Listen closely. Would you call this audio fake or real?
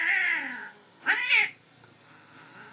real